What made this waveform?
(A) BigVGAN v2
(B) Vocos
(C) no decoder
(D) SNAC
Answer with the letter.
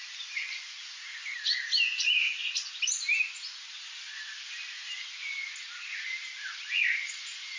C